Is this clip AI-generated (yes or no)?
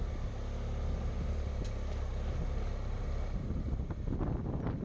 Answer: no